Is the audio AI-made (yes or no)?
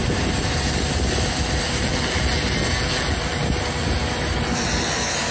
no